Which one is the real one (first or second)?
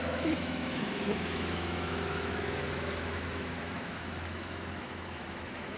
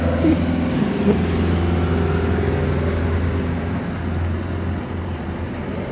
second